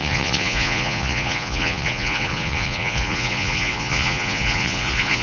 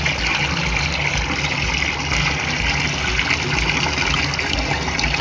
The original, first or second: second